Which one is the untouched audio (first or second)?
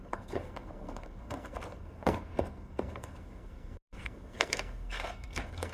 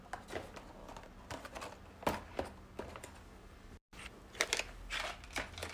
second